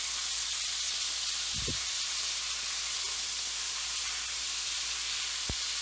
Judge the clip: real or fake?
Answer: real